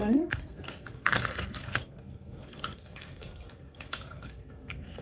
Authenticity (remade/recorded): remade